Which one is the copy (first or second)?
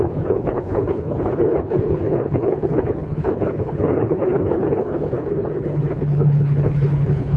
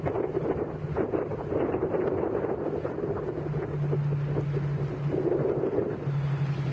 first